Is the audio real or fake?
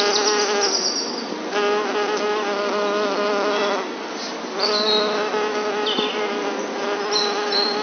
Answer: real